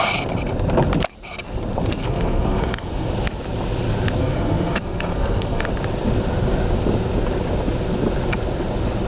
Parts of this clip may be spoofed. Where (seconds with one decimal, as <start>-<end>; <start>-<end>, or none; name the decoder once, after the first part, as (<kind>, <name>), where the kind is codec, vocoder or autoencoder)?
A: 2.0-3.1 (codec, SNAC); 4.2-5.7